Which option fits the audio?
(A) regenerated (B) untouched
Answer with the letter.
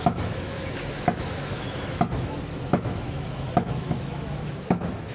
A